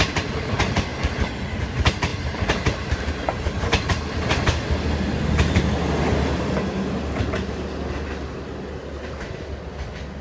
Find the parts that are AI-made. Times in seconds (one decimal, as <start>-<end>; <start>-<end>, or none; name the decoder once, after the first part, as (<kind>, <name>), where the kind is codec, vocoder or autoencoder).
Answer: 2.1-3.1 (vocoder, BigVGAN v2)